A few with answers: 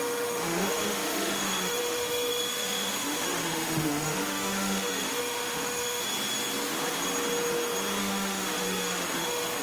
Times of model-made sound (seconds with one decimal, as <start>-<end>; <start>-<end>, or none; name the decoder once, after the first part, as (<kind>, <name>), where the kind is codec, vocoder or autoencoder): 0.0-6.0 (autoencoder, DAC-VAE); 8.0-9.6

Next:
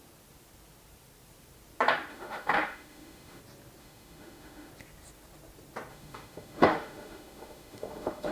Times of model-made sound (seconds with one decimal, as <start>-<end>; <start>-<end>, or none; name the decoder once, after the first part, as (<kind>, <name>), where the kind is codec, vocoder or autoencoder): 2.1-3.4 (autoencoder, DAC-VAE); 3.8-4.7; 5.9-8.3

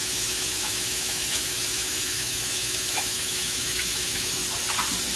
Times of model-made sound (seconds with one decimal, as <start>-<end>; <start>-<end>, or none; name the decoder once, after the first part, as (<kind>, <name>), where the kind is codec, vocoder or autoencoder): 0.0-4.4 (autoencoder, DAC-VAE)